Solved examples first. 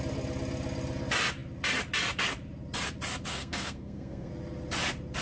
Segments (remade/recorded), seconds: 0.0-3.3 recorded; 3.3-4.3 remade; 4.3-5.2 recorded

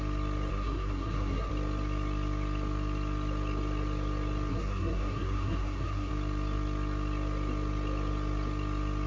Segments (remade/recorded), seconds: 0.0-0.5 recorded; 0.5-1.5 remade; 1.5-4.5 recorded; 4.5-6.1 remade; 6.1-9.1 recorded